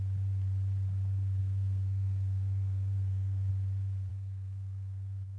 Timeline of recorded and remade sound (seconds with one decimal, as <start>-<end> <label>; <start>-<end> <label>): 0.0-1.4 recorded; 1.4-3.5 remade; 3.5-4.1 recorded; 4.1-5.4 remade